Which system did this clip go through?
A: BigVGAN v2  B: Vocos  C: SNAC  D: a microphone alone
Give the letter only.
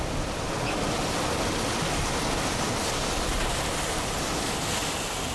D